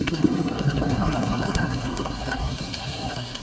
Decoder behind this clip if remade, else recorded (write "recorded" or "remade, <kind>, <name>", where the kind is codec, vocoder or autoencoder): remade, codec, SNAC